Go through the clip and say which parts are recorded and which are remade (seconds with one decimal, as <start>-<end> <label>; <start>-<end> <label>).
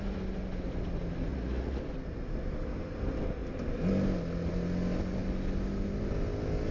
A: 0.0-1.3 recorded; 1.3-1.8 remade; 1.8-6.7 recorded